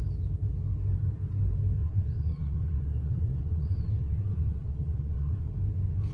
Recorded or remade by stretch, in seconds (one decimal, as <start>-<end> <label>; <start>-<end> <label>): 0.0-1.8 recorded; 1.8-5.5 remade; 5.5-6.1 recorded